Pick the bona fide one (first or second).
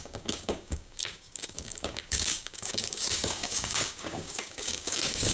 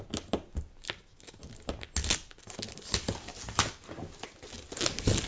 second